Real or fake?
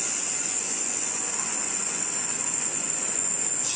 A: fake